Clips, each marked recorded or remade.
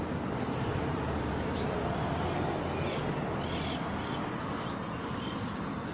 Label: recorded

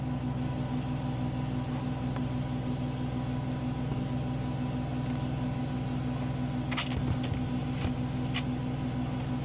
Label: recorded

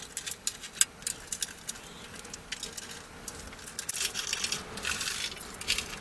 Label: recorded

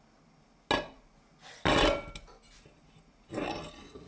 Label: recorded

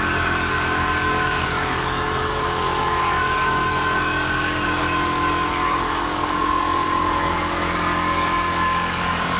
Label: remade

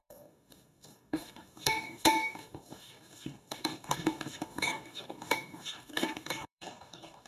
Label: remade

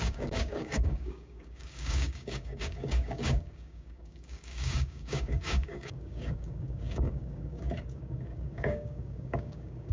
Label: remade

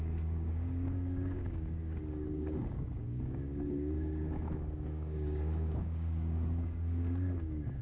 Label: remade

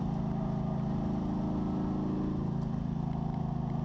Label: recorded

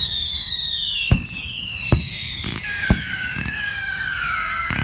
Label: remade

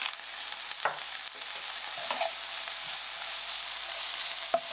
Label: recorded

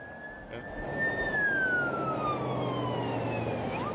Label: recorded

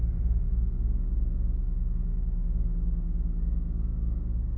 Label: remade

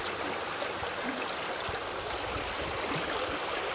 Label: recorded